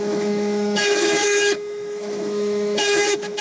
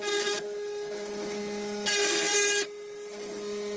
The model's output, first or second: first